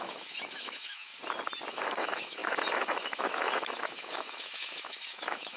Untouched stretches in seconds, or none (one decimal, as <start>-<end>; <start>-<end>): 1.1-1.7